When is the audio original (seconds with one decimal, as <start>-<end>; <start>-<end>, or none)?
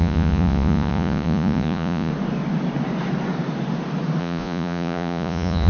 2.1-4.2